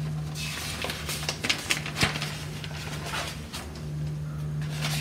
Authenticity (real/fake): real